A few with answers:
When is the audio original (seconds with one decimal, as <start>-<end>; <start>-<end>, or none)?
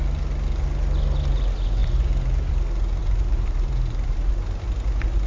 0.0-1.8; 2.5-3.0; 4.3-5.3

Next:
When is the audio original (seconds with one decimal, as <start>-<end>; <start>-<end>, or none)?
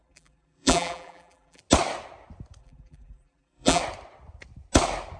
1.6-2.6; 3.8-5.2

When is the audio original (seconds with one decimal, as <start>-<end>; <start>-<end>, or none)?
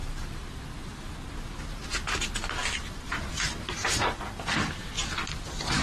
0.0-2.6; 3.3-3.8; 4.8-5.2